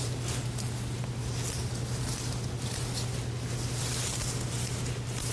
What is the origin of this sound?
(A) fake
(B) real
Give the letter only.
B